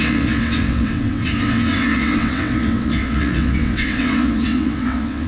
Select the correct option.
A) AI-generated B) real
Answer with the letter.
A